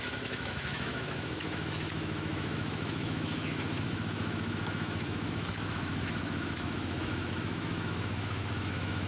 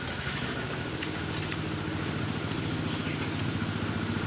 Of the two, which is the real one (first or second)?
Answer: second